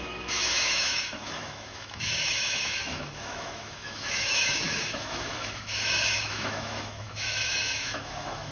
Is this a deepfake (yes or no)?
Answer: yes